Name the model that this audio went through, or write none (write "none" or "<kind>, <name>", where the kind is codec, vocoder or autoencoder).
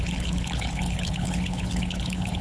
codec, HILCodec